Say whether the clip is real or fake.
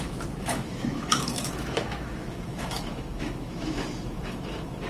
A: fake